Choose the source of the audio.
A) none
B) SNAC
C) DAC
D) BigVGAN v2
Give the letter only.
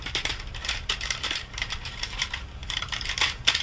D